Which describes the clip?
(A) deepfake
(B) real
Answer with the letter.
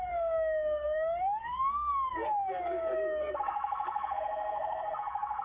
A